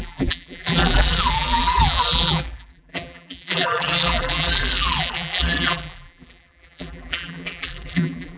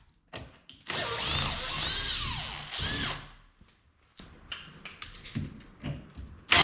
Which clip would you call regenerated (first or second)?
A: first